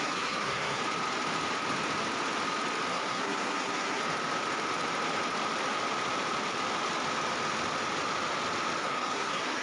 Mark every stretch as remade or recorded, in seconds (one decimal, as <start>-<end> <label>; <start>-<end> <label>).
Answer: 0.0-0.8 remade; 0.8-2.9 recorded; 2.9-4.0 remade; 4.0-8.8 recorded; 8.8-9.6 remade